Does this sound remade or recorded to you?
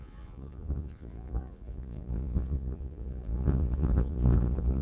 remade